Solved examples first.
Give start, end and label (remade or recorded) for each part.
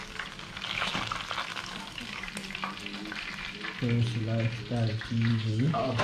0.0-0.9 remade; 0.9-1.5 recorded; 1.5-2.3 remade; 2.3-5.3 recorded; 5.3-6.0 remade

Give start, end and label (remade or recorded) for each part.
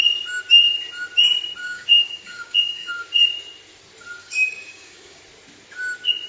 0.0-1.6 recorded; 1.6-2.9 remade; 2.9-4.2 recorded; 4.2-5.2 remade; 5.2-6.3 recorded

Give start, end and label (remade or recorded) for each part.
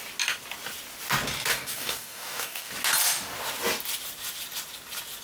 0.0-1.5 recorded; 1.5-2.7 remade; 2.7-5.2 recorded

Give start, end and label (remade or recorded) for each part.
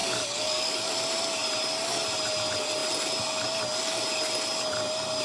0.0-0.9 remade; 0.9-5.2 recorded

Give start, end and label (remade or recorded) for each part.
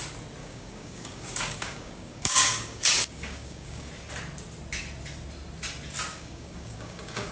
0.0-0.4 recorded; 0.4-3.9 remade; 3.9-6.1 recorded; 6.1-7.3 remade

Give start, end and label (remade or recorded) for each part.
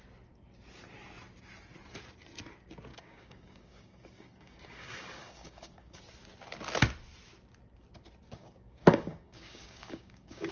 0.0-2.9 recorded; 2.9-6.0 remade; 6.0-8.4 recorded; 8.4-10.5 remade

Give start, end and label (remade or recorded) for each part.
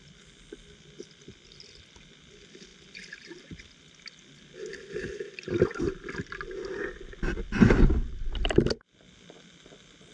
0.0-10.1 recorded